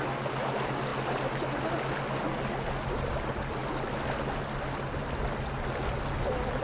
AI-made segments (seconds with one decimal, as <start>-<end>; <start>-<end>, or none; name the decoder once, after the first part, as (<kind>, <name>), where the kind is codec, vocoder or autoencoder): none